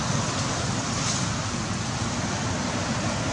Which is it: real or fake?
real